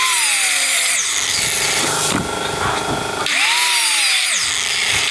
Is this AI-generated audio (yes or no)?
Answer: no